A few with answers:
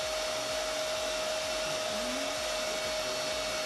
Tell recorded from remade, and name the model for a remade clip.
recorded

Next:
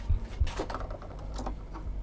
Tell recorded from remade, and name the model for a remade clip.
recorded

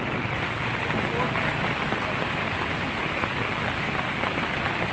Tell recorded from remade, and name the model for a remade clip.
recorded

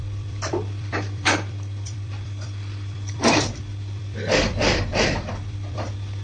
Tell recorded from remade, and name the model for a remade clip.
remade, vocoder, BigVGAN v2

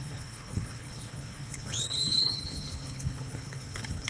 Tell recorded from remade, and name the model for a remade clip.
remade, codec, HILCodec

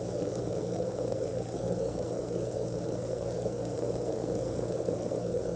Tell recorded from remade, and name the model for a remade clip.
remade, codec, SNAC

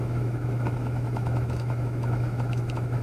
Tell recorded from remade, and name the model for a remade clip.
remade, autoencoder, DAC-VAE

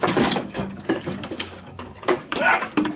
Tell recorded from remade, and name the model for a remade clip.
remade, codec, DAC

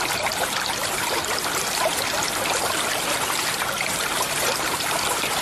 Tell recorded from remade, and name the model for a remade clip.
recorded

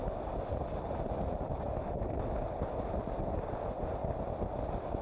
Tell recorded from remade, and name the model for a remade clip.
recorded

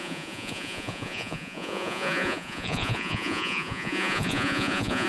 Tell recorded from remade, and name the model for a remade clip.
remade, vocoder, Vocos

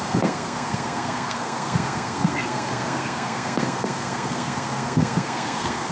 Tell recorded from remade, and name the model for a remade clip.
remade, codec, SNAC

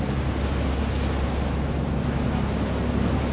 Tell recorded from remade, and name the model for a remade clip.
recorded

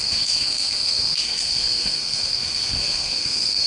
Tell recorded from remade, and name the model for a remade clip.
remade, codec, SNAC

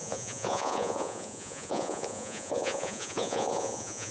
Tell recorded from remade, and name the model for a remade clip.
remade, vocoder, Vocos